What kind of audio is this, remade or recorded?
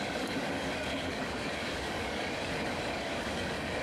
remade